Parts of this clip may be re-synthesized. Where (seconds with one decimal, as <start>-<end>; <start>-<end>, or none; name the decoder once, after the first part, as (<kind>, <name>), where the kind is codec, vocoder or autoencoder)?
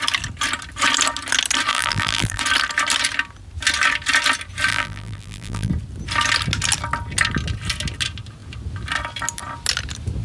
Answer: 1.7-2.4 (vocoder, BigVGAN v2); 4.7-5.7